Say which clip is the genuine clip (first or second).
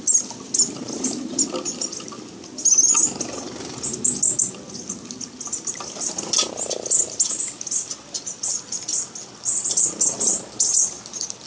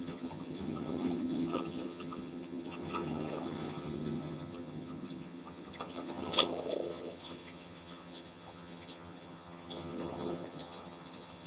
first